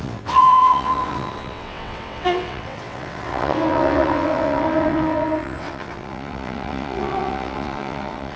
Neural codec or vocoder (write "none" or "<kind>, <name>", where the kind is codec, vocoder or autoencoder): vocoder, WaveNeXt